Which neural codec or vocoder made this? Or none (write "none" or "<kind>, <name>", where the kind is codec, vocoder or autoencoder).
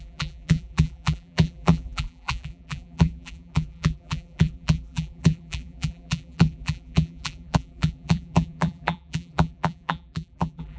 vocoder, BigVGAN v2